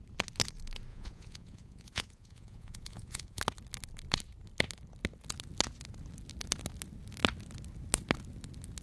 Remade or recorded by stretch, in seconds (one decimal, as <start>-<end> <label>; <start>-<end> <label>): 0.0-0.9 recorded; 0.9-3.4 remade; 3.4-8.8 recorded